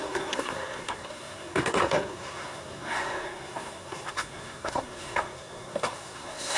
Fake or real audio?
fake